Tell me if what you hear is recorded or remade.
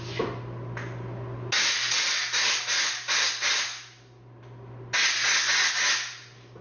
recorded